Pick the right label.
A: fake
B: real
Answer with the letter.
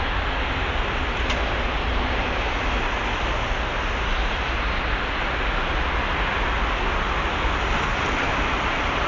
B